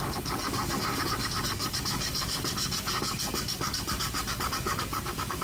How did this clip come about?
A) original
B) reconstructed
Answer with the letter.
B